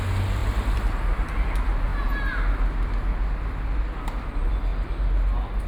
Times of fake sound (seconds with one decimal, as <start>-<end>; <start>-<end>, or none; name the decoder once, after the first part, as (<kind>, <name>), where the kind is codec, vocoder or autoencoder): none